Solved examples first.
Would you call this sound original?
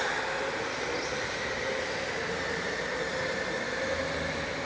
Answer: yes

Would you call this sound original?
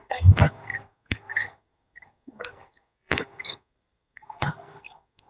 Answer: no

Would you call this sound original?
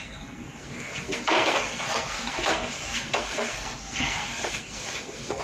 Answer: no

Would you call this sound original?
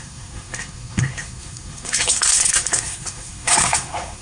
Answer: no